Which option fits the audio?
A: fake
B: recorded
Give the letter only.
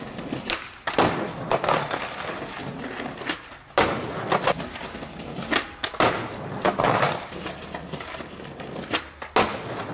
B